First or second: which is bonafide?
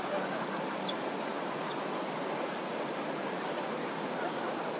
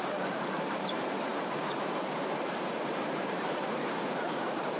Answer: first